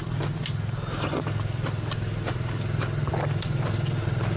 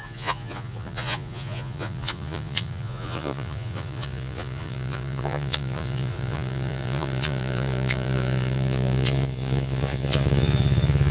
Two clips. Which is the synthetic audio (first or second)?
second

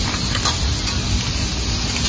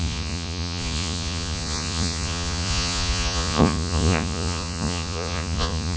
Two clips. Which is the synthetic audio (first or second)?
second